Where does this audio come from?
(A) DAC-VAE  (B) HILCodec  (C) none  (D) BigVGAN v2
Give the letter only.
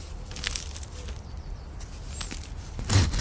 C